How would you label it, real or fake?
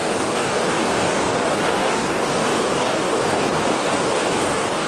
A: fake